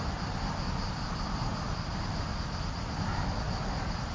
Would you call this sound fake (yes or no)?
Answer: no